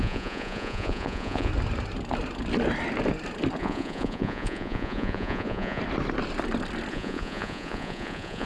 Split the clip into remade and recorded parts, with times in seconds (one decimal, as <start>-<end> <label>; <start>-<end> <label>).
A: 0.0-1.5 remade; 1.5-3.6 recorded; 3.6-5.8 remade; 5.8-6.9 recorded; 6.9-8.5 remade